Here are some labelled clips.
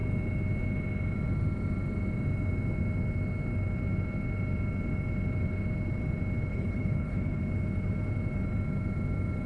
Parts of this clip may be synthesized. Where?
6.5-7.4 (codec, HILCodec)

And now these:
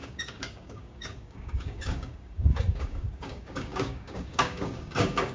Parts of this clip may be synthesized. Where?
0.0-5.3 (codec, DAC)

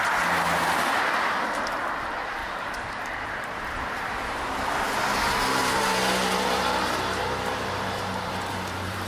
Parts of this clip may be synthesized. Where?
2.4-4.7 (vocoder, BigVGAN v2); 5.6-9.1

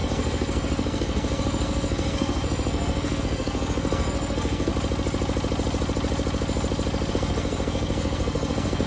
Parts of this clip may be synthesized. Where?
0.0-4.7 (codec, SNAC); 7.1-8.9

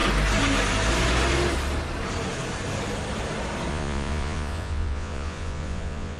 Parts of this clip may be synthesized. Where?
3.7-6.2 (vocoder, Vocos)